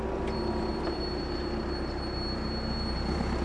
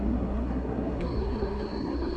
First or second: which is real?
first